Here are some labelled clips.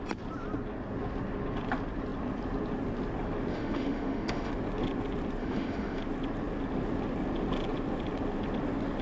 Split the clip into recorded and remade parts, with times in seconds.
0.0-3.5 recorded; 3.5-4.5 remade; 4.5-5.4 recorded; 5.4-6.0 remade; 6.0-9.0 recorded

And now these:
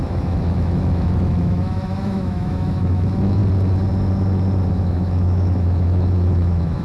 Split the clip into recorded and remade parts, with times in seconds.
0.0-3.4 remade; 3.4-4.7 recorded; 4.7-6.8 remade

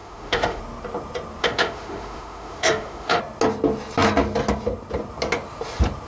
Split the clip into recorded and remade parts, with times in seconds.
0.0-0.6 remade; 0.6-1.4 recorded; 1.4-3.2 remade; 3.2-6.1 recorded

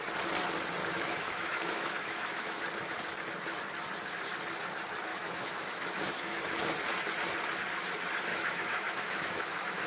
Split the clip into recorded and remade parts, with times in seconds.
0.0-0.8 recorded; 0.8-2.6 remade; 2.6-5.1 recorded; 5.1-6.4 remade; 6.4-8.3 recorded; 8.3-9.9 remade